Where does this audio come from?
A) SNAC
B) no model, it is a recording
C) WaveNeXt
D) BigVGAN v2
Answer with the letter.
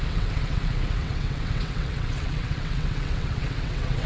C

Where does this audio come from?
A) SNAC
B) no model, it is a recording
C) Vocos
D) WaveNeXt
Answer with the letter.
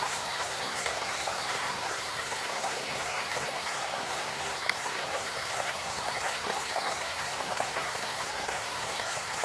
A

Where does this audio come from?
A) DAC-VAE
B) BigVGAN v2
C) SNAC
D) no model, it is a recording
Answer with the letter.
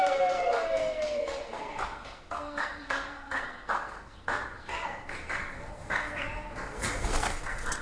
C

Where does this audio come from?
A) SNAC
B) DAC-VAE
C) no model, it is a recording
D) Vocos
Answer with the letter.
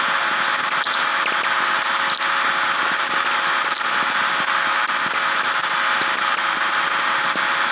C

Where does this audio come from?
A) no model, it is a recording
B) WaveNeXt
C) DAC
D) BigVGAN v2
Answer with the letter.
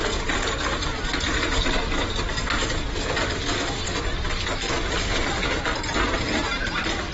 A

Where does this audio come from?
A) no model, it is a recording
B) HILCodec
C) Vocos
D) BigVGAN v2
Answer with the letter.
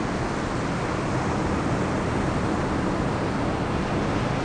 A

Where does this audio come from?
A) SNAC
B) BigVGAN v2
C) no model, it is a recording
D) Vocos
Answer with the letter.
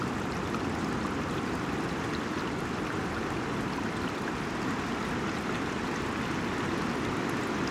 C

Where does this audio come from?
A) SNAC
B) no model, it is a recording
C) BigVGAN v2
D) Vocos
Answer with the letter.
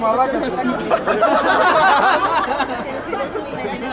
B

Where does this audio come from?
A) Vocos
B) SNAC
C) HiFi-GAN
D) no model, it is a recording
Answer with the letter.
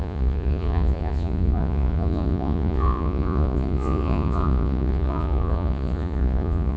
A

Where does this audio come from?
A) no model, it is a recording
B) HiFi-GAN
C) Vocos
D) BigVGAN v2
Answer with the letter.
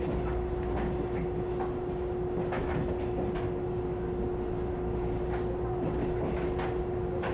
A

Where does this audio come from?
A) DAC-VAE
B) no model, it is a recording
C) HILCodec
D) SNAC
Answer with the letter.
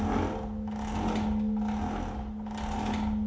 B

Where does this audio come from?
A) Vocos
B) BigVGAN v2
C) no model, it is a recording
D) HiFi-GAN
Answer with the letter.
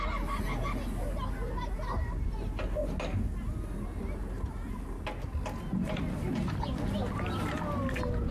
C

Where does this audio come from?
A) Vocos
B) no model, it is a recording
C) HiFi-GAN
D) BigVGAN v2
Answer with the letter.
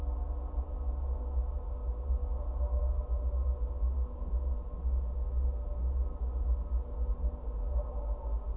B